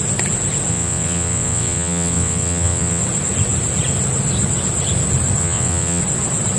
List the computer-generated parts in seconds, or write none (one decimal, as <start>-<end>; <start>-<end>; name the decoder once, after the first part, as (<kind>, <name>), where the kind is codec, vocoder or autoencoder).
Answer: 0.7-3.0 (vocoder, WaveNeXt); 5.4-6.0